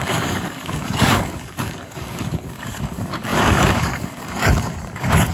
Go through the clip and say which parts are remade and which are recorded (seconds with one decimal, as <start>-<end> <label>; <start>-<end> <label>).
0.0-5.3 remade